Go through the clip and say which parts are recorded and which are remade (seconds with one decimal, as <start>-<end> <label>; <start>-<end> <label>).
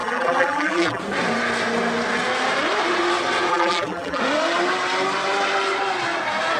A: 0.0-1.0 remade; 1.0-3.5 recorded; 3.5-4.2 remade; 4.2-6.6 recorded